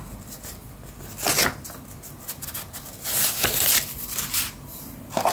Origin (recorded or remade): recorded